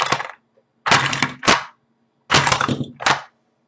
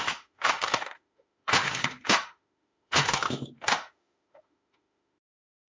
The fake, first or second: second